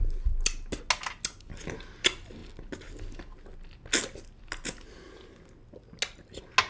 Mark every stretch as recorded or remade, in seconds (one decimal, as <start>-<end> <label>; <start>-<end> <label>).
0.0-6.7 recorded